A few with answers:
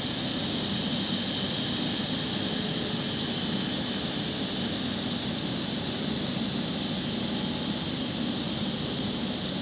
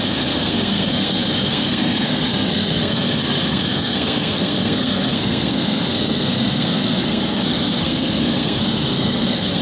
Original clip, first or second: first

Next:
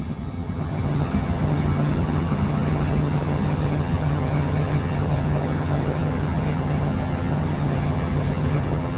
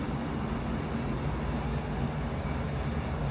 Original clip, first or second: second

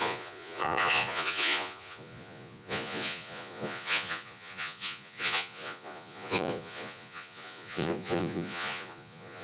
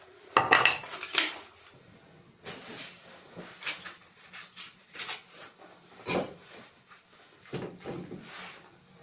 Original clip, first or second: second